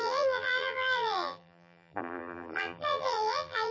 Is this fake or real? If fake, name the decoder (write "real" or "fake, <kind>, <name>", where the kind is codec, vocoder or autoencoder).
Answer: fake, vocoder, BigVGAN v2